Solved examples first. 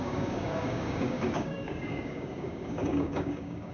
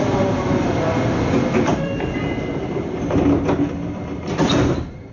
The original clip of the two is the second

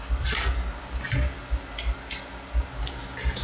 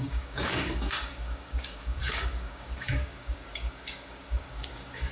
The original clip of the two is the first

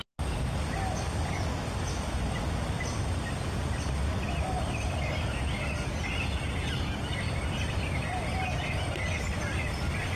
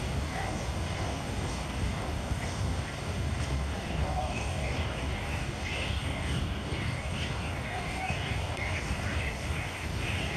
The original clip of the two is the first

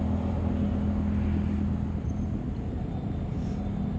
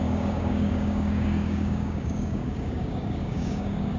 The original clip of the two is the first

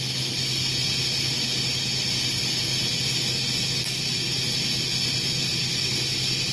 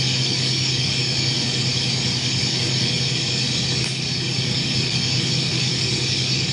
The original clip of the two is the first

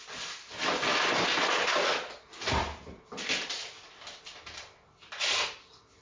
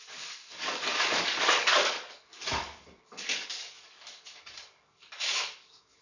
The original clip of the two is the first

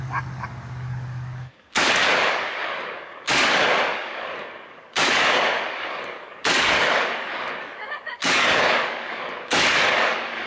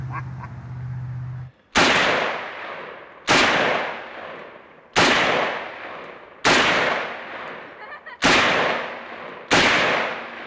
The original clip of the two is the second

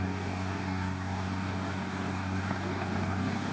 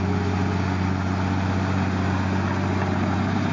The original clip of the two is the second